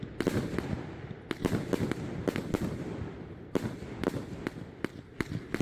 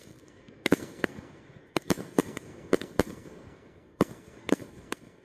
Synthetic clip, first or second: second